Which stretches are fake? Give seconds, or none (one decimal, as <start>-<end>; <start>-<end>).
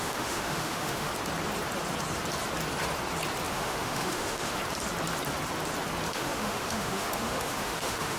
0.0-1.1; 3.5-4.6; 6.1-8.2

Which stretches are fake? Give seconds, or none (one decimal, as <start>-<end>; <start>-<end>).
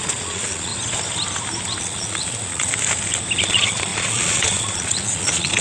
0.0-0.7; 1.8-2.7; 3.4-5.6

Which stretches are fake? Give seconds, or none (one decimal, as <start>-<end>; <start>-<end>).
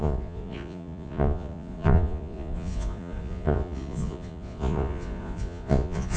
0.0-6.2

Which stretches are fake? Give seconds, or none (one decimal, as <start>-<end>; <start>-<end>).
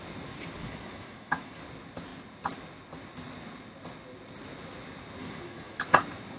0.6-1.6; 5.2-5.8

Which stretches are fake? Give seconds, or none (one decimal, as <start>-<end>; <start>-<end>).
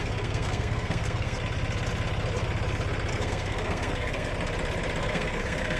0.0-1.4; 3.1-4.3; 5.0-5.8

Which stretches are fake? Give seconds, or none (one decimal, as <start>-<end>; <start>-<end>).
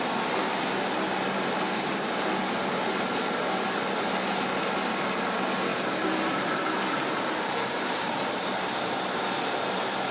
5.7-9.2